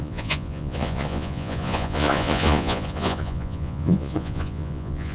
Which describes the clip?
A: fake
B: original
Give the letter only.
A